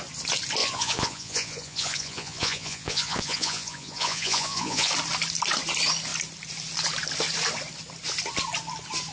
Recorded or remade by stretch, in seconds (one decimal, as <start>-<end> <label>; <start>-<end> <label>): 0.0-0.6 recorded; 0.6-4.9 remade; 4.9-9.1 recorded